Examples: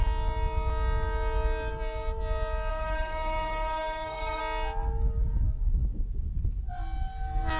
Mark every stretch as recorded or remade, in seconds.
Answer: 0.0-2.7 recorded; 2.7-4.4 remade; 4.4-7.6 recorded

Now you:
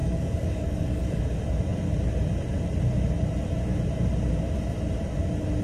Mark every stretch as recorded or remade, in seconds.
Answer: 0.0-1.2 remade; 1.2-5.6 recorded

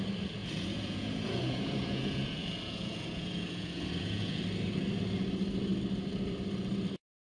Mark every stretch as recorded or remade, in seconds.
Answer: 0.0-0.4 recorded; 0.4-4.4 remade; 4.4-7.4 recorded

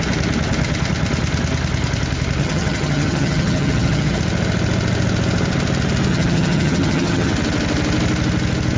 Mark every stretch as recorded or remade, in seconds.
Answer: 0.0-2.4 recorded; 2.4-4.2 remade; 4.2-6.1 recorded; 6.1-7.3 remade; 7.3-8.8 recorded